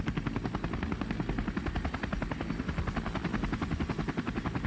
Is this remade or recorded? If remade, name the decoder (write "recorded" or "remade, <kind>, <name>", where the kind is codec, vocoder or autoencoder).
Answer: recorded